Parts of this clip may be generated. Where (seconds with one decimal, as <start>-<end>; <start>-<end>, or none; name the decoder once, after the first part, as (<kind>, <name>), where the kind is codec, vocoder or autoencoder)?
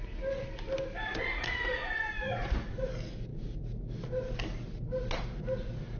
1.3-2.8 (vocoder, Vocos)